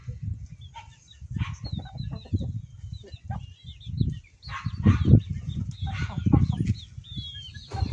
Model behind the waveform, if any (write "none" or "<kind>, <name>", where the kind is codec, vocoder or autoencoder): none